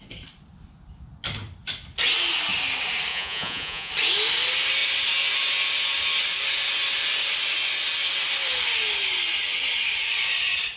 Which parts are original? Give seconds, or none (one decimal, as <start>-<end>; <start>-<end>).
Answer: 0.0-3.1; 3.9-10.8